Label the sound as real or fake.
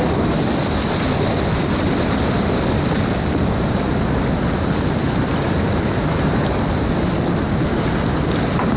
real